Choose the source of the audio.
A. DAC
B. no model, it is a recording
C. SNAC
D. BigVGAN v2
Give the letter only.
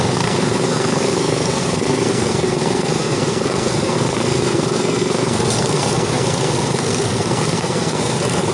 C